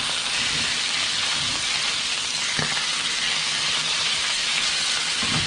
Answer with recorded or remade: recorded